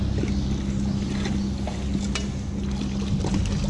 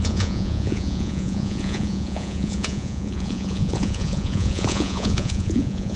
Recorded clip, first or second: first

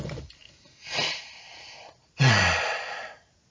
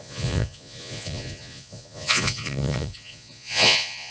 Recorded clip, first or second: first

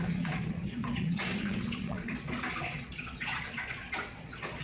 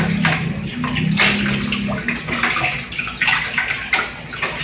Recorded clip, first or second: second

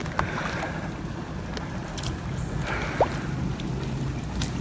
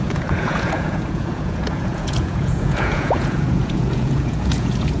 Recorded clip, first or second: first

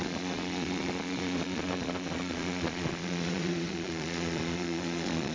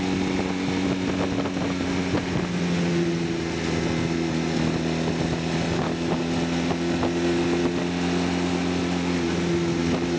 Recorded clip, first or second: second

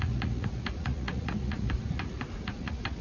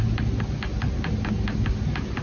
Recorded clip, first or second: second